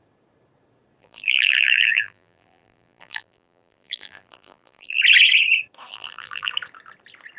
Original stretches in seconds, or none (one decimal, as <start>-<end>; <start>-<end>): 0.0-1.0; 5.0-5.9; 6.5-7.4